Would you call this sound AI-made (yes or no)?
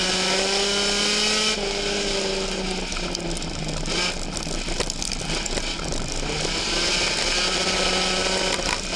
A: no